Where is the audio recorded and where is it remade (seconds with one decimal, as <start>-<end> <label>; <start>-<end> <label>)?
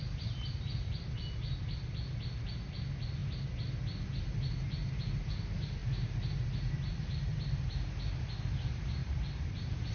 0.0-5.8 recorded; 5.8-6.9 remade; 6.9-9.0 recorded; 9.0-9.9 remade